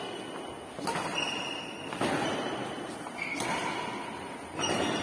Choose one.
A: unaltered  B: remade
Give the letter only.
A